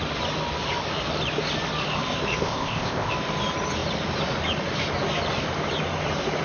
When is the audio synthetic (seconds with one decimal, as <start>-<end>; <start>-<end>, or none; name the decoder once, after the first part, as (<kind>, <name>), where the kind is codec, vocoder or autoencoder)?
2.4-3.1 (codec, ZipCodec)